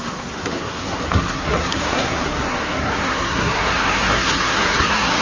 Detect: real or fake fake